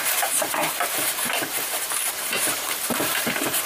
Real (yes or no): no